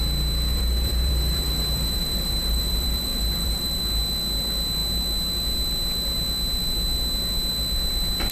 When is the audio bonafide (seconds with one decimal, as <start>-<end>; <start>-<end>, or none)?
0.0-0.5; 3.8-8.3